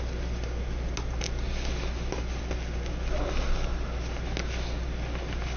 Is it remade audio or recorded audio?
recorded